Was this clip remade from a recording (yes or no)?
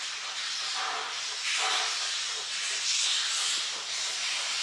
yes